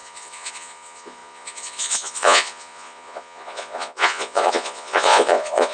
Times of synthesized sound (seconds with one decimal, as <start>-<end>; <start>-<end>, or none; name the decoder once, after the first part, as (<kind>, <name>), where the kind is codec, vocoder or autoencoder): 0.0-5.7 (vocoder, Vocos)